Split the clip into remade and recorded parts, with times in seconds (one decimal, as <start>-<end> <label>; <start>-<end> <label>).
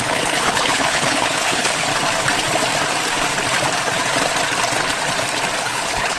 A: 0.0-1.9 remade; 1.9-5.6 recorded; 5.6-6.2 remade